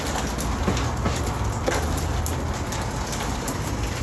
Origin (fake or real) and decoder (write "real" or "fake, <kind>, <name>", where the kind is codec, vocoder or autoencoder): real